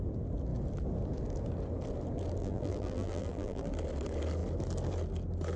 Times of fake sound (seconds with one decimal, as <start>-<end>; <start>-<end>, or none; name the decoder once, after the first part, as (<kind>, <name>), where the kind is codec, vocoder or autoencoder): 2.4-3.7 (vocoder, BigVGAN v2)